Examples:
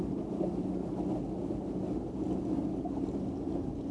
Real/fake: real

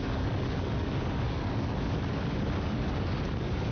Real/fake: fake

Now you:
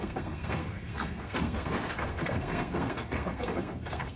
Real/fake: fake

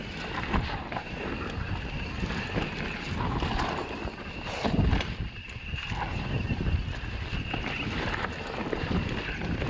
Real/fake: real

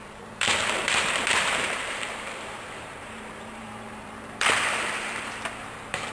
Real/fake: fake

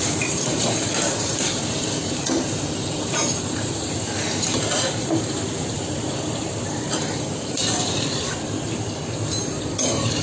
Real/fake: fake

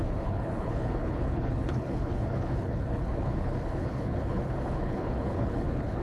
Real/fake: fake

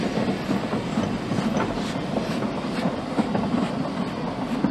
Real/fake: real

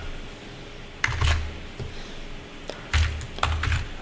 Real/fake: real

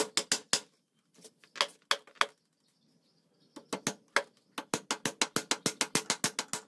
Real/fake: real